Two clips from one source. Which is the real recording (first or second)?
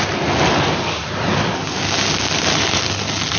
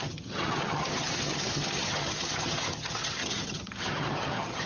first